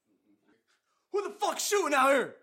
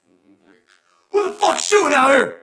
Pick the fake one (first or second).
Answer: second